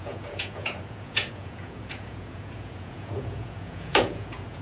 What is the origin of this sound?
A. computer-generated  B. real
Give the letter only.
A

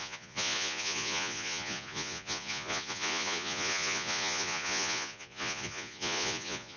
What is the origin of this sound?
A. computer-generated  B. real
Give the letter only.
A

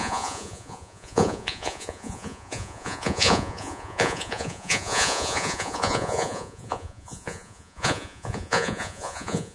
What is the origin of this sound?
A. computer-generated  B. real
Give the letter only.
A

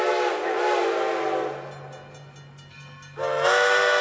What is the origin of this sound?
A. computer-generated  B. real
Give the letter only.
B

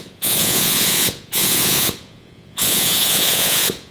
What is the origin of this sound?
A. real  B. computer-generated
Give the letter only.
B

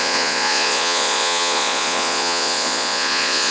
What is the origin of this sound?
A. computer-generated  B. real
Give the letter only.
A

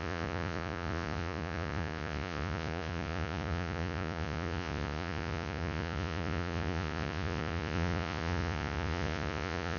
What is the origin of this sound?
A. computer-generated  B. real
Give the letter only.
A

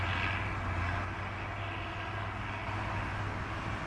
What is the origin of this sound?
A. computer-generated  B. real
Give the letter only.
B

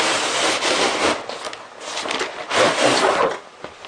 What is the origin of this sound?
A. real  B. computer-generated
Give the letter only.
A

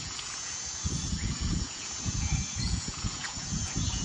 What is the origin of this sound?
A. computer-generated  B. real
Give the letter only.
A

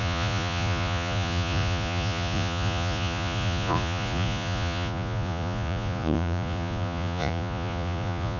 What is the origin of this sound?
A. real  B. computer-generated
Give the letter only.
B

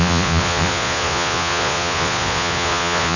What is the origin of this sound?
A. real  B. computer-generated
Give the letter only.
B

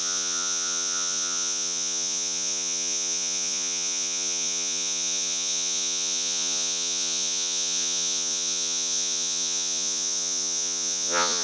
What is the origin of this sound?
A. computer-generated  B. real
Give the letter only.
A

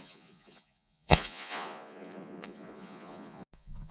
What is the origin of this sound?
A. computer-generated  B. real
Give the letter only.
A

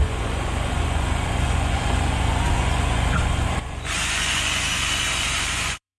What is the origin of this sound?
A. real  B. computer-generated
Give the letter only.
B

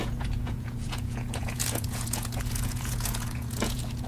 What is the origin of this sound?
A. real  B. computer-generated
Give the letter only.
B